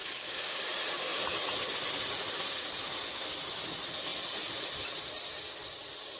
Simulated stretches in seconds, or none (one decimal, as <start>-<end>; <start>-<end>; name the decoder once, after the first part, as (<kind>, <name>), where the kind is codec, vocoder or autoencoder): 0.0-0.6 (codec, DAC)

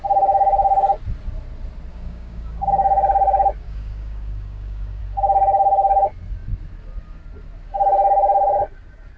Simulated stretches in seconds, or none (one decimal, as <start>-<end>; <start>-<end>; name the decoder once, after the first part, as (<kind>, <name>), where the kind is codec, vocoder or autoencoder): 1.9-2.7 (codec, DAC); 3.6-5.0

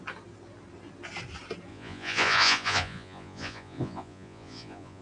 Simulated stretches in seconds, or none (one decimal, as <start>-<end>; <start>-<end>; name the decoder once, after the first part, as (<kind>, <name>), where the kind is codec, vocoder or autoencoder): 1.7-5.0 (vocoder, Vocos)

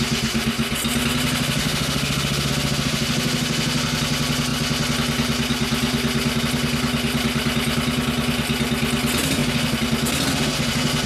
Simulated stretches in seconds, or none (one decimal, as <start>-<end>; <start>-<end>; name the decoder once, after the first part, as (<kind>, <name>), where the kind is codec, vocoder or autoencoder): 1.6-2.5 (autoencoder, DAC-VAE)